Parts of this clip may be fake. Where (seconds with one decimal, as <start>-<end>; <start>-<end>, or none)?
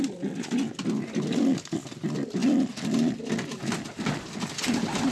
none